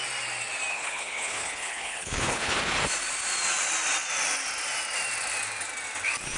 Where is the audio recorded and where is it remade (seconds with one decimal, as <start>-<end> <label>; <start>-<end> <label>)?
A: 0.0-0.7 recorded; 0.7-2.6 remade; 2.6-6.4 recorded